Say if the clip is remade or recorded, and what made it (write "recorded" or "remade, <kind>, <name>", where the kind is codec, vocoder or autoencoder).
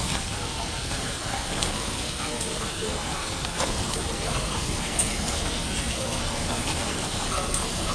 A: remade, codec, SNAC